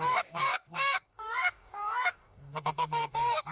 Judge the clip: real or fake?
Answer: fake